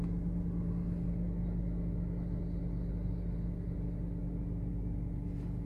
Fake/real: real